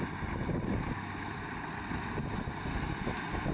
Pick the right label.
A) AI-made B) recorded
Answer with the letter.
B